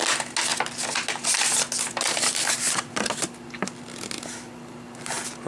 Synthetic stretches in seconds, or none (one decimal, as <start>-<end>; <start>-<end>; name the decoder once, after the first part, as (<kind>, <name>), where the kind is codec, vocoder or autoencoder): none